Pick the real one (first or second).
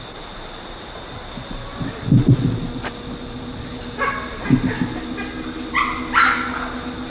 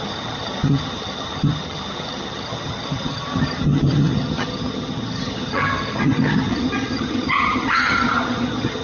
first